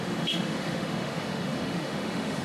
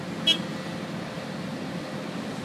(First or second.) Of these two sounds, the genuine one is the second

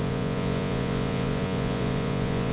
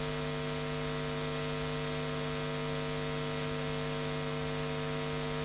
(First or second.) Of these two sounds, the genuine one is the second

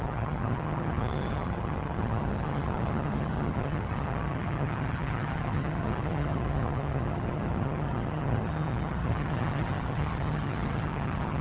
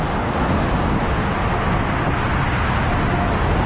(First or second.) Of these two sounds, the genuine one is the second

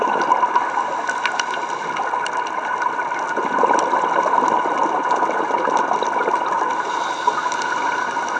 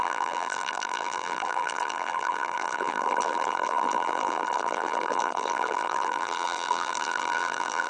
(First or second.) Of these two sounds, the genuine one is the first